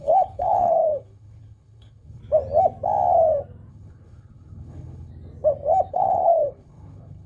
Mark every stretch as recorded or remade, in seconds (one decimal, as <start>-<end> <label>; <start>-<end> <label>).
0.0-2.2 remade; 2.2-3.7 recorded; 3.7-5.1 remade; 5.1-5.9 recorded; 5.9-7.3 remade